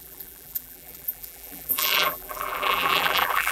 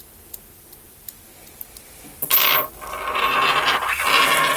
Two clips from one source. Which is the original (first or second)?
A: second